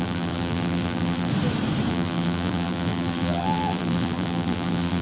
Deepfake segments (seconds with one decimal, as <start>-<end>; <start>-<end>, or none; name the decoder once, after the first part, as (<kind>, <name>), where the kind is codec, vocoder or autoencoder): 0.0-1.3 (vocoder, BigVGAN v2); 1.9-5.0